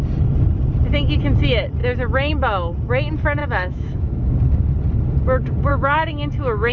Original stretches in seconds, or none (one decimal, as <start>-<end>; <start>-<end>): 0.0-3.4; 4.3-5.7